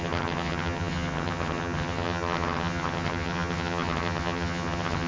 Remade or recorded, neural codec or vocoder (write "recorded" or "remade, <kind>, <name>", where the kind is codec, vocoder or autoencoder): remade, vocoder, HiFi-GAN